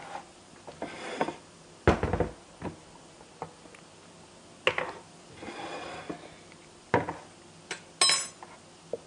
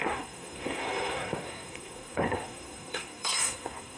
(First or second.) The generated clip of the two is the second